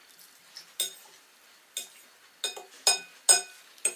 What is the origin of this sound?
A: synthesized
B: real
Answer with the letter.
B